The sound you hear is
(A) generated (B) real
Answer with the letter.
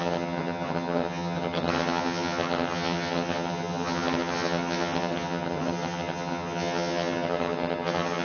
A